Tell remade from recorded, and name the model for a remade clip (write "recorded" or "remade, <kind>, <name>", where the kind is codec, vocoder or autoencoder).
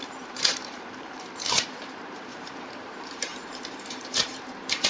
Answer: remade, vocoder, BigVGAN v2